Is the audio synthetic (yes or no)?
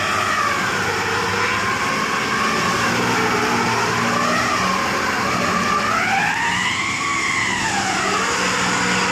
no